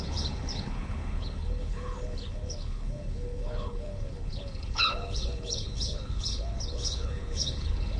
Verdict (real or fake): fake